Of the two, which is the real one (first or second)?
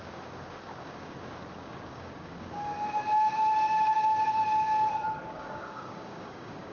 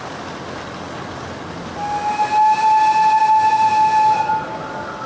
second